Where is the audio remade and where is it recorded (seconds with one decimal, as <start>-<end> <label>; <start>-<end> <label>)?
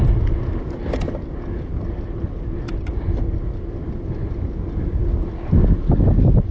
0.0-6.5 recorded